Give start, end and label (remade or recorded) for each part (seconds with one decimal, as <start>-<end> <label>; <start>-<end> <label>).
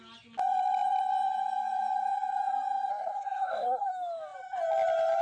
0.0-2.9 recorded; 2.9-3.9 remade; 3.9-5.2 recorded